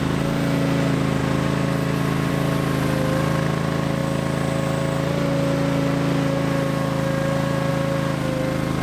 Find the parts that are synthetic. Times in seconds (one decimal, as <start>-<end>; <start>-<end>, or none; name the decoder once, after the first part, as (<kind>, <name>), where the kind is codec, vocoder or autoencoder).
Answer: none